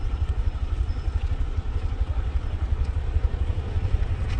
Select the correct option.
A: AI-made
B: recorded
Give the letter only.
A